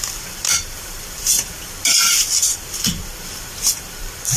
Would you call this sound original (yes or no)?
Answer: no